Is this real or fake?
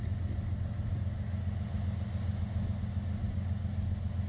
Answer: real